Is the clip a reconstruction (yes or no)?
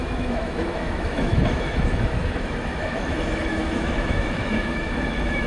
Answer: yes